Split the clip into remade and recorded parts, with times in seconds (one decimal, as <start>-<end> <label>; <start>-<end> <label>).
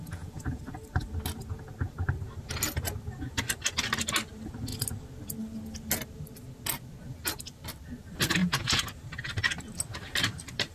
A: 0.0-0.6 remade; 0.6-8.4 recorded; 8.4-8.9 remade; 8.9-10.7 recorded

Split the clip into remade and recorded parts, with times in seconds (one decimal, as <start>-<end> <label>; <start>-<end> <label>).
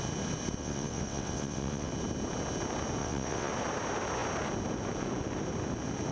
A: 0.0-0.6 recorded; 0.6-1.9 remade; 1.9-3.0 recorded; 3.0-3.5 remade; 3.5-6.1 recorded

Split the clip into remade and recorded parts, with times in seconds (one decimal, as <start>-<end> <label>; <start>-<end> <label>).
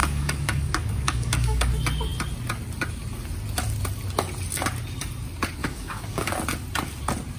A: 0.0-1.7 remade; 1.7-5.6 recorded; 5.6-6.3 remade; 6.3-7.4 recorded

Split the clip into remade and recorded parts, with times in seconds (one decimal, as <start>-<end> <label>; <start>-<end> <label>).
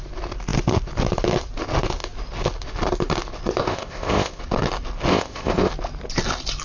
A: 0.0-3.6 recorded; 3.6-4.4 remade; 4.4-5.1 recorded; 5.1-5.7 remade; 5.7-6.6 recorded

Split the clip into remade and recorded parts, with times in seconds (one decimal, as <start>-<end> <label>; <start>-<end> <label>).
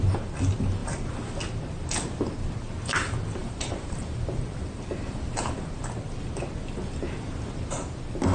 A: 0.0-0.8 recorded; 0.8-1.4 remade; 1.4-3.4 recorded; 3.4-5.8 remade; 5.8-8.3 recorded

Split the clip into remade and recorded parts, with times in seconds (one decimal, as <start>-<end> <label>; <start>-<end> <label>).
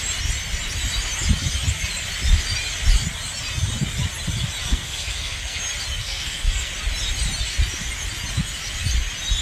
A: 0.0-4.7 recorded; 4.7-5.6 remade; 5.6-6.0 recorded; 6.0-6.7 remade; 6.7-9.4 recorded